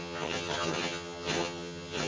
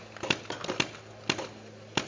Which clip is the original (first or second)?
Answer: second